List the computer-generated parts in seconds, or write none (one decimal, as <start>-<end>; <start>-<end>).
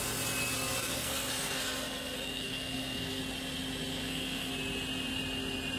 0.8-3.2; 3.9-4.5